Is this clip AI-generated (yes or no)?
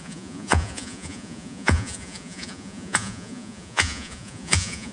yes